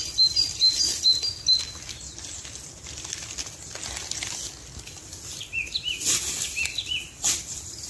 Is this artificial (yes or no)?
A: no